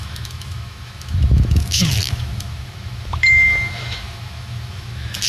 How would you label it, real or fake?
fake